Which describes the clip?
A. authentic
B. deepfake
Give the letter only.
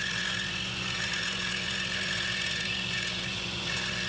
B